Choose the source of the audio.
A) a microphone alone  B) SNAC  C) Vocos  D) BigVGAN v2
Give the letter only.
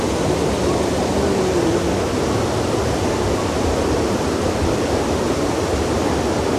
D